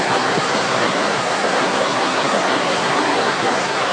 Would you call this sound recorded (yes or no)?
no